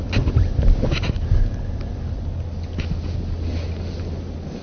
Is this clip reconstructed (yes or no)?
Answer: no